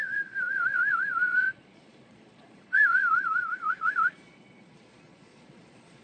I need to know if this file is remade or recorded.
remade